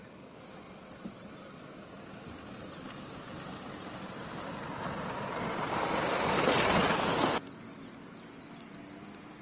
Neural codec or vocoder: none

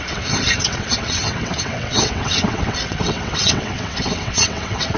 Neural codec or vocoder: vocoder, WaveNeXt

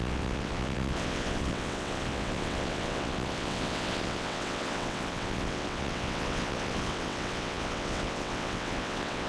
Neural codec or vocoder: vocoder, WaveNeXt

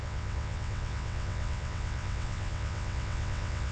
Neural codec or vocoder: vocoder, WaveNeXt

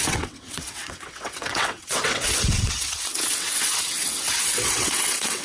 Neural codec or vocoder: vocoder, WaveNeXt